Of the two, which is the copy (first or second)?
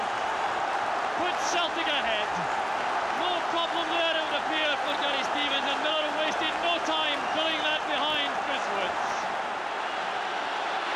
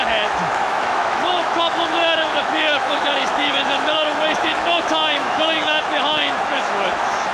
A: second